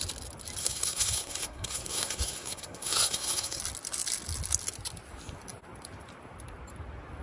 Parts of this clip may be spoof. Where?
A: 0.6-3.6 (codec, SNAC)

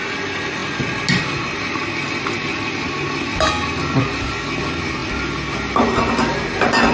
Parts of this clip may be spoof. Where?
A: none